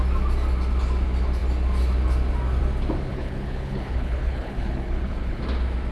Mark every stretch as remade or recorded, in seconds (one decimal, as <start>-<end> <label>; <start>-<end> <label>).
0.0-3.1 recorded; 3.1-5.4 remade; 5.4-5.9 recorded